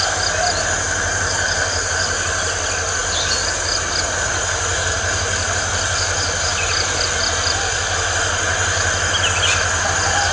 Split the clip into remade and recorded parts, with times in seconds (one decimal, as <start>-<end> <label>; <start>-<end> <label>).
0.0-10.3 recorded